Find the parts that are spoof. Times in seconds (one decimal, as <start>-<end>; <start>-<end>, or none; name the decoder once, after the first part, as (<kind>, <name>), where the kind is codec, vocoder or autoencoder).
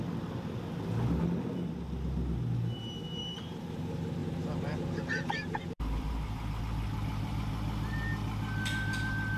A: 3.2-3.8 (vocoder, BigVGAN v2); 4.2-6.6